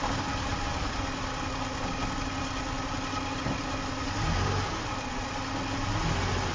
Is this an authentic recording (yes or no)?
yes